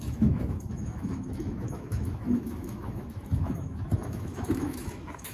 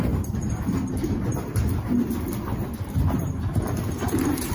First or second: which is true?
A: second